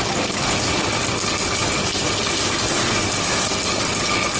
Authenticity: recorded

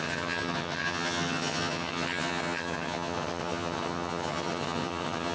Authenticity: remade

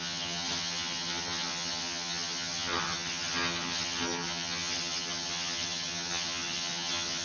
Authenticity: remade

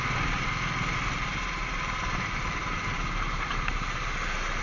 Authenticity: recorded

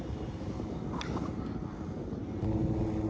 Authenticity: recorded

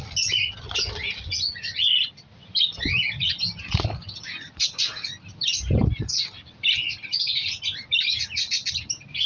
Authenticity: recorded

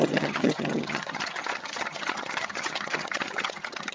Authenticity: remade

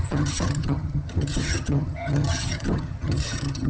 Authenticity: remade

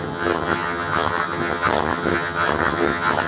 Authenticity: remade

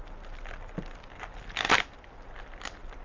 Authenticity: recorded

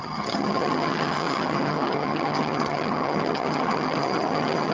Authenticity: remade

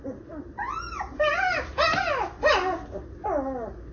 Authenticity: recorded